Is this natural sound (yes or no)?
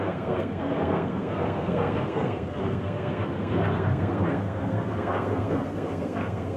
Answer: no